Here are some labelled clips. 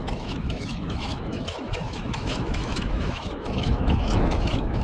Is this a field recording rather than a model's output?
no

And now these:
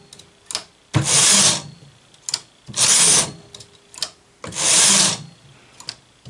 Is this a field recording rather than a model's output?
yes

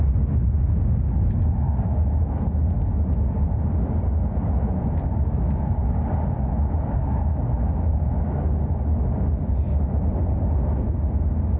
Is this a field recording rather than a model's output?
yes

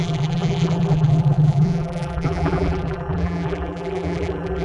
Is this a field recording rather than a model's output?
no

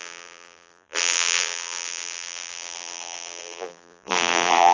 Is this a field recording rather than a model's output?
no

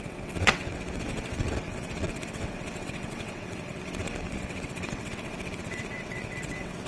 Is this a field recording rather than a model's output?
no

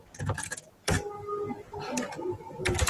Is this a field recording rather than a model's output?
yes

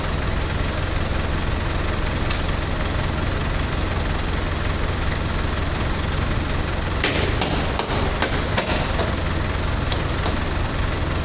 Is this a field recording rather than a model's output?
yes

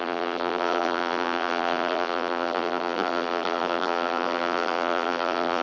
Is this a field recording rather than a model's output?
no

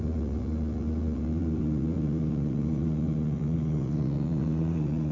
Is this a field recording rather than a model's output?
no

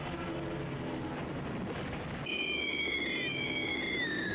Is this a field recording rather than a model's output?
yes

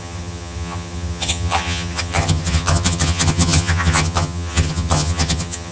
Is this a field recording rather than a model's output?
no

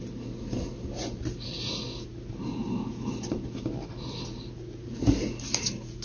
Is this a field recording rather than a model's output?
yes